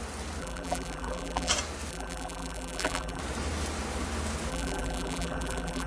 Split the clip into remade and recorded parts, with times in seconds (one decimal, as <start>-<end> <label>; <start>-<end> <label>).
0.0-0.4 recorded; 0.4-1.5 remade; 1.5-1.9 recorded; 1.9-3.2 remade; 3.2-4.5 recorded; 4.5-5.9 remade